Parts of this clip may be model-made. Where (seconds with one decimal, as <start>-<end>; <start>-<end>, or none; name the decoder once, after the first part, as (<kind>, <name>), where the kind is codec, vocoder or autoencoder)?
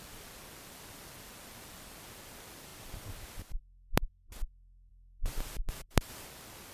0.0-6.7 (vocoder, BigVGAN v2)